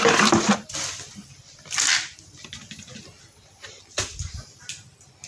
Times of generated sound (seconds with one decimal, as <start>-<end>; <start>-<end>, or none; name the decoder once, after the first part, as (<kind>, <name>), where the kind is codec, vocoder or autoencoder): none